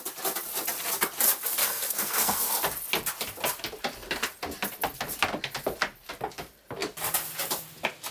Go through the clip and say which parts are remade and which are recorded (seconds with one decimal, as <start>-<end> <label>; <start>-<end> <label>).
0.0-1.6 recorded; 1.6-2.6 remade; 2.6-8.1 recorded